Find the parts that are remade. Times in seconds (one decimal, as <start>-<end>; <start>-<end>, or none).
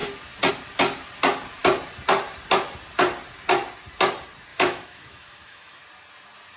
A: 4.5-5.8